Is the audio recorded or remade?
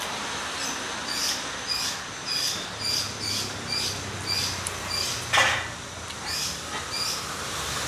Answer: recorded